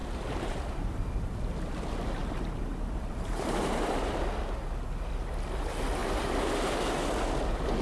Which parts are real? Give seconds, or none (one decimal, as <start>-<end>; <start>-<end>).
0.9-2.2; 4.2-7.8